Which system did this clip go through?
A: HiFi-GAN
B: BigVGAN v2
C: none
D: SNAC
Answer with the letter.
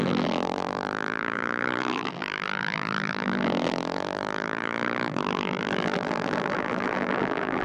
B